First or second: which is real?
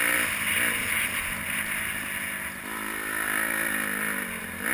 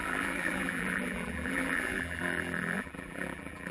first